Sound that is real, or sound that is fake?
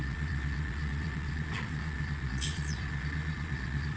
fake